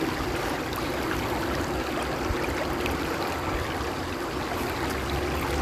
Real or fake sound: real